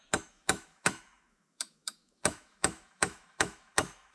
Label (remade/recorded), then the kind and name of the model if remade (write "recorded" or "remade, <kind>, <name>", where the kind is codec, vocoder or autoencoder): remade, autoencoder, DAC-VAE